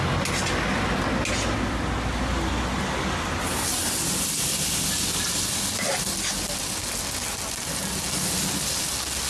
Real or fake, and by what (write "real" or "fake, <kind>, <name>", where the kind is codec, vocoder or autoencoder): real